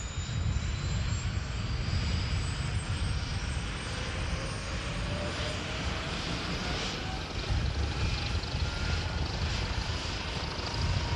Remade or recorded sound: recorded